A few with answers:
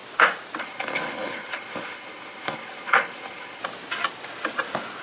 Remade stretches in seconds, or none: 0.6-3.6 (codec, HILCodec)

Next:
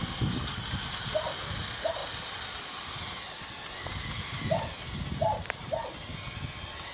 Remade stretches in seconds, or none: none

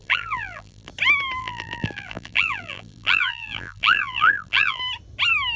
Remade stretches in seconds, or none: 0.0-0.9 (vocoder, BigVGAN v2); 1.4-4.8

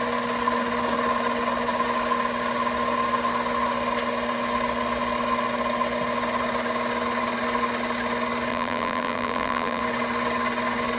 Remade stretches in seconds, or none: 8.5-9.8 (vocoder, BigVGAN v2)

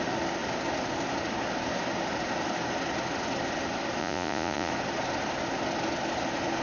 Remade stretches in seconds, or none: 4.0-4.7 (vocoder, Vocos)

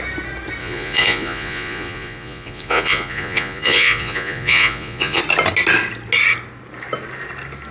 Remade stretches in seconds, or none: 0.6-5.2 (vocoder, Vocos)

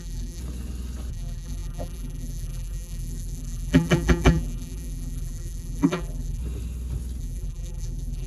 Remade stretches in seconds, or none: 0.0-0.4 (vocoder, BigVGAN v2); 1.1-6.4; 7.2-8.3